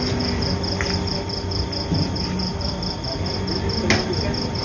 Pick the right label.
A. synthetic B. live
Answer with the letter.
A